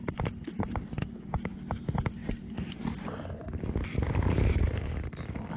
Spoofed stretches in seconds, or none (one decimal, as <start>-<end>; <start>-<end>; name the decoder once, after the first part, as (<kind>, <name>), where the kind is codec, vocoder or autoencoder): 0.0-2.2 (vocoder, BigVGAN v2); 3.0-5.6